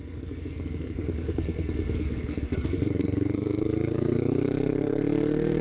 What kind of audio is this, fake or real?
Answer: fake